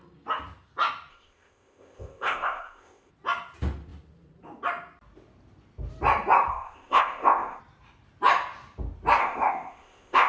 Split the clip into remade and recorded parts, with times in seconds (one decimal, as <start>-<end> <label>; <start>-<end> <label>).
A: 0.0-1.1 recorded; 1.1-3.1 remade; 3.1-6.5 recorded; 6.5-7.6 remade; 7.6-9.2 recorded; 9.2-10.3 remade